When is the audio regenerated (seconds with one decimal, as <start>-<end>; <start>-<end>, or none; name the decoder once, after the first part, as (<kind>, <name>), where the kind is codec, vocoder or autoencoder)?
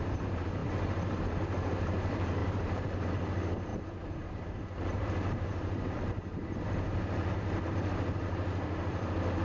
0.0-9.4 (vocoder, BigVGAN v2)